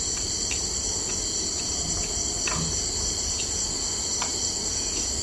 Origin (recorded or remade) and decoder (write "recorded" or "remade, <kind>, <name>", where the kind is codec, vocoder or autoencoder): recorded